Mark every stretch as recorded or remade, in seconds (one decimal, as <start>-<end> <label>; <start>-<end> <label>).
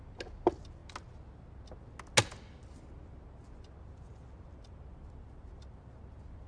0.0-6.5 recorded